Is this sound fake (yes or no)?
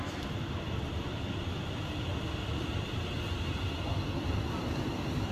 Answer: no